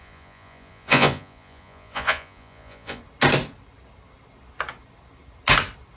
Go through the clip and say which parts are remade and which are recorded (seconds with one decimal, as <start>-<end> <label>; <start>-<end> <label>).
0.0-3.0 remade; 3.0-6.0 recorded